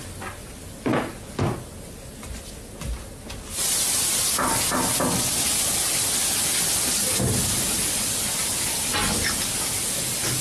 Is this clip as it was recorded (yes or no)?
yes